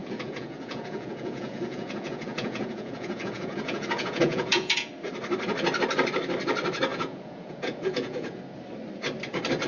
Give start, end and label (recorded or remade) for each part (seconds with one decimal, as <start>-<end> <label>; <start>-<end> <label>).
0.0-4.9 remade; 4.9-6.9 recorded; 6.9-8.4 remade; 8.4-9.7 recorded